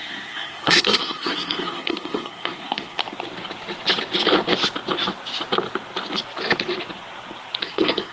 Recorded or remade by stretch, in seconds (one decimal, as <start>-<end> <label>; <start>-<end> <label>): 0.0-3.0 remade; 3.0-7.6 recorded; 7.6-8.1 remade